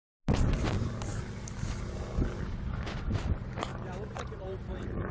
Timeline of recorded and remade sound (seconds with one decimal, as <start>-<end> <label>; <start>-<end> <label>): 0.0-3.7 recorded; 3.7-5.1 remade